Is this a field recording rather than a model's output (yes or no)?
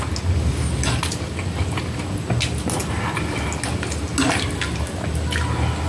yes